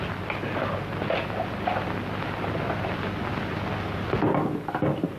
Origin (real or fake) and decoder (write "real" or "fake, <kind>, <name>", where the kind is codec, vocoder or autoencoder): real